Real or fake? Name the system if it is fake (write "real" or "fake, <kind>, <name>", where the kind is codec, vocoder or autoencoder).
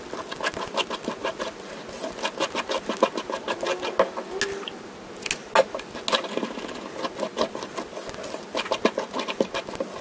real